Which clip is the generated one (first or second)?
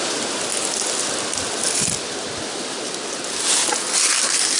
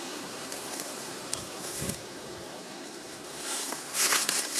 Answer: second